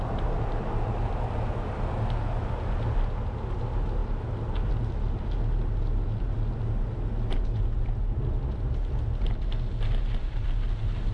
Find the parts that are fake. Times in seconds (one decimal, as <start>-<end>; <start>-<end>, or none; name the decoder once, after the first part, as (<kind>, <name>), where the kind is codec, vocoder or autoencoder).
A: none